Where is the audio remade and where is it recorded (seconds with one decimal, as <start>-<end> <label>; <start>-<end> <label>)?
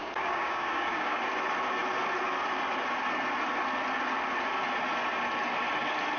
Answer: 0.0-1.2 remade; 1.2-6.2 recorded